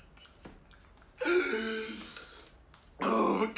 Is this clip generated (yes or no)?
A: no